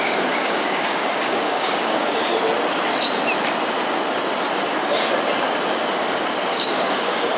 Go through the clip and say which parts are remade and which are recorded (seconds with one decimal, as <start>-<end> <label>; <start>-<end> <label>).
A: 0.0-2.3 remade; 2.3-6.5 recorded; 6.5-7.4 remade